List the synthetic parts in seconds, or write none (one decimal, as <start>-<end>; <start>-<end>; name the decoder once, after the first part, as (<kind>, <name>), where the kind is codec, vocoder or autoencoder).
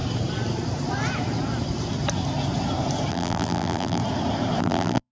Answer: 3.1-4.0 (vocoder, BigVGAN v2); 4.6-5.1